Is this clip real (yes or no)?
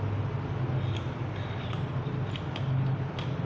yes